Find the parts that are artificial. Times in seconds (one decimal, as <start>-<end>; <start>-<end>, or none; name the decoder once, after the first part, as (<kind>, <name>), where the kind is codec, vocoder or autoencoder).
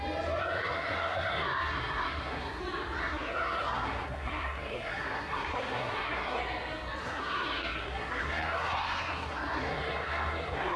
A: 0.4-2.6 (codec, SNAC); 3.0-6.4; 7.0-10.8